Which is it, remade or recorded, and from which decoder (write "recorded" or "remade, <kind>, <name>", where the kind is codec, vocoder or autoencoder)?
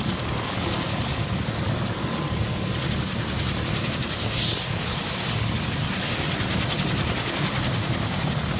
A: recorded